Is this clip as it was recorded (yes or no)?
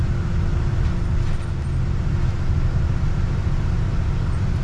yes